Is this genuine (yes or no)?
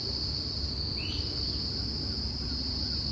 yes